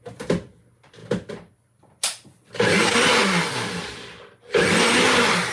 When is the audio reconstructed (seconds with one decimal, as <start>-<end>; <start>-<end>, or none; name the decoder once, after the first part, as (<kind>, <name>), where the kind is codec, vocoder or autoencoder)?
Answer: none

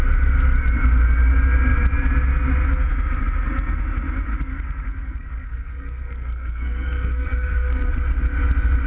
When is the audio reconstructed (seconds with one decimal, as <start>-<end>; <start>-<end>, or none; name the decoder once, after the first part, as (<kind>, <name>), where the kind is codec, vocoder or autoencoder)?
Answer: 4.3-7.9 (codec, SNAC)

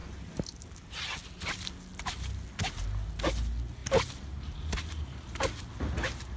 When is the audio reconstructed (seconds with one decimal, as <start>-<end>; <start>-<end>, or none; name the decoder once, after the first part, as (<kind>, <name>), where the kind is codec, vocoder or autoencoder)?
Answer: none

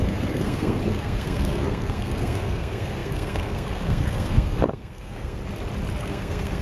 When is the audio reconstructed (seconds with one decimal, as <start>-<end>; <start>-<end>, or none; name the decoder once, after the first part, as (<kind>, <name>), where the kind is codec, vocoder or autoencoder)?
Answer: 0.0-5.4 (codec, SNAC); 6.0-6.6

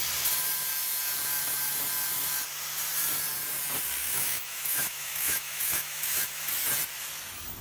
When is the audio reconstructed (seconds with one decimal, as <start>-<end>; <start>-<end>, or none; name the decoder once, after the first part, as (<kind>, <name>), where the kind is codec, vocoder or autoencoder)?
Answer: 4.0-6.5 (autoencoder, DAC-VAE)

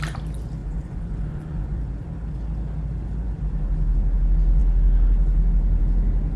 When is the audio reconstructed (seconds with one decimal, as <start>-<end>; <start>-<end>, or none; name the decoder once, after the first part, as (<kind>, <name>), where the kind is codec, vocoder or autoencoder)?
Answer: 0.6-1.8 (vocoder, Vocos)

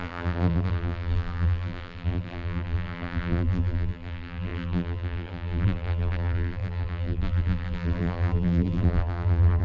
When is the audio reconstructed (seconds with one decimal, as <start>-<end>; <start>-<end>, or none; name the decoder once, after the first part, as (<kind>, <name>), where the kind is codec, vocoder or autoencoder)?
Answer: 0.0-9.6 (vocoder, BigVGAN v2)